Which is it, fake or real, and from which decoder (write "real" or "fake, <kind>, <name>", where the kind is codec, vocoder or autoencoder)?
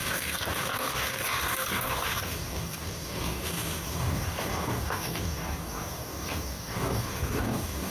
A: fake, codec, DAC